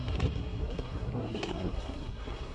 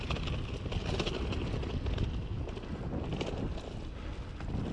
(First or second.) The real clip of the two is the second